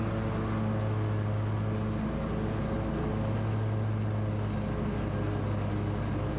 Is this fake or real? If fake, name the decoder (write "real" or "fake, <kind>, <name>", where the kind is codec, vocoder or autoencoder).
real